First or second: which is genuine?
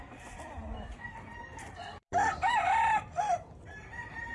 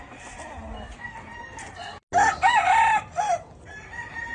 second